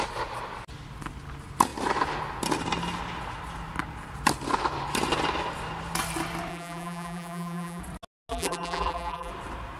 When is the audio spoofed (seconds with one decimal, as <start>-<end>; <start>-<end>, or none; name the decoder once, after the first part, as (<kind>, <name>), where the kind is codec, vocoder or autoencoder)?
6.5-7.8 (vocoder, BigVGAN v2); 8.3-9.3